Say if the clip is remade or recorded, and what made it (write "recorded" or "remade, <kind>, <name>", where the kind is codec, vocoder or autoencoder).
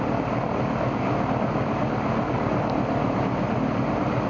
recorded